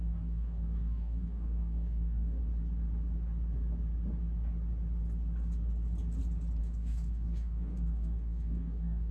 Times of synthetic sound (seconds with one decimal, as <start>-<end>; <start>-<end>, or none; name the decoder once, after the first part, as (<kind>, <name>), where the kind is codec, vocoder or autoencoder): 0.0-2.4 (codec, DAC); 6.6-9.1